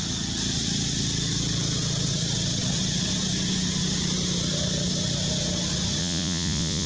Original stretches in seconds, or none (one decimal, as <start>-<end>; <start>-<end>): 0.0-6.0

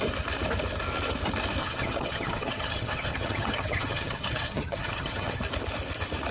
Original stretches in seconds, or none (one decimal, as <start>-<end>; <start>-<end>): 0.0-1.6; 5.4-6.3

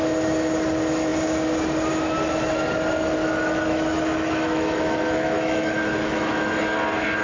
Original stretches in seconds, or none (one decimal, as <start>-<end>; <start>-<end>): 0.0-3.2; 6.5-7.2

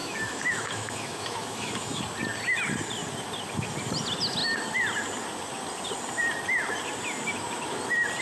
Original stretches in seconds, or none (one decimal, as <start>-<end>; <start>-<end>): 2.0-8.2

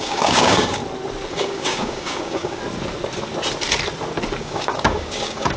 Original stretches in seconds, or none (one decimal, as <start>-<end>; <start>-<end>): 0.8-1.3; 2.6-4.4

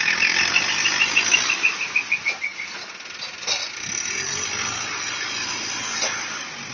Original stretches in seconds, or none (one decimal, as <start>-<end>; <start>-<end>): 0.0-6.7

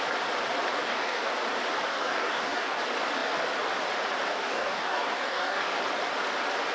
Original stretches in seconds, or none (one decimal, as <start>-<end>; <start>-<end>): 0.0-0.7; 1.3-1.9; 2.8-4.3; 5.8-6.7